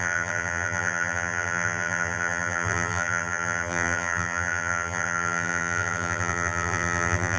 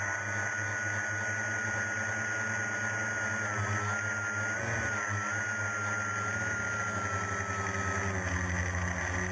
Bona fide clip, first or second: second